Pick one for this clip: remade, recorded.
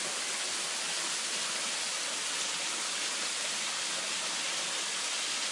recorded